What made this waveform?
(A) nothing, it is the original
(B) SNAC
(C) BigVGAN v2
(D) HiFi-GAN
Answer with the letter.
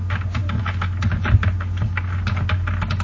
A